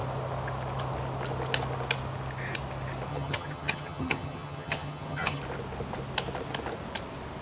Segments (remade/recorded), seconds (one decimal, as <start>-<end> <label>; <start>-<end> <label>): 0.0-3.1 recorded; 3.1-5.4 remade; 5.4-7.4 recorded